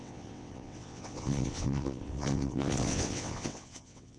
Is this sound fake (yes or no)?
yes